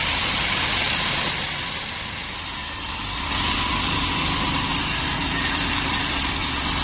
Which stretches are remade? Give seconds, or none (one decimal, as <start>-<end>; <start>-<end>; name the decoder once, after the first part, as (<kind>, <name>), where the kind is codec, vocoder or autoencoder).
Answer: none